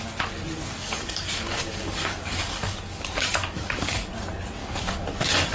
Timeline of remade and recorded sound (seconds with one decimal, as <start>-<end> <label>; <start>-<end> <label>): 0.0-0.8 recorded; 0.8-4.1 remade; 4.1-4.6 recorded; 4.6-5.5 remade